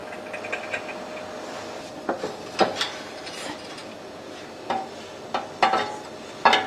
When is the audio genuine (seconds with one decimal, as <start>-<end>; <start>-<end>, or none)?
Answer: 0.0-3.8; 4.3-6.7